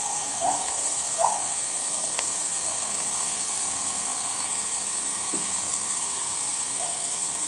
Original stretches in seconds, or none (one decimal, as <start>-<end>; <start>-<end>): none